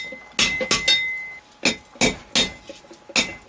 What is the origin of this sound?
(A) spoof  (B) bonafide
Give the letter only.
B